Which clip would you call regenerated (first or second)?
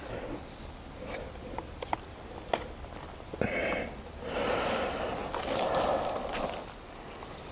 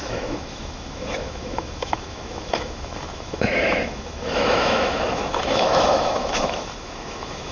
second